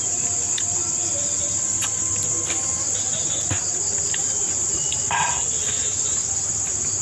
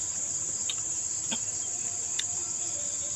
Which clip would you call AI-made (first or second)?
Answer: second